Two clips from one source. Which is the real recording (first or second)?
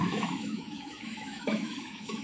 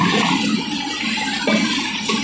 second